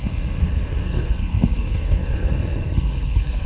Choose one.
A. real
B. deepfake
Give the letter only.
B